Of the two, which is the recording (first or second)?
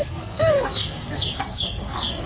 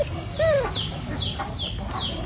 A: second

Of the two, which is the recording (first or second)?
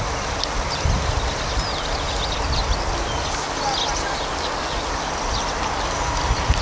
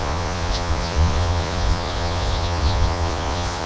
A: first